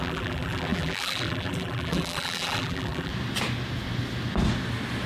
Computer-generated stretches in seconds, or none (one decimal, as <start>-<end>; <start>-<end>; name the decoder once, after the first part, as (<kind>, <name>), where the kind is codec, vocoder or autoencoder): 0.0-3.1 (vocoder, BigVGAN v2)